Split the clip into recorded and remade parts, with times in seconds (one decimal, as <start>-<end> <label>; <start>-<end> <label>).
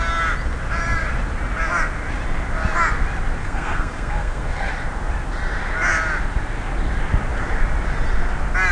0.0-3.4 recorded; 3.4-4.7 remade; 4.7-8.7 recorded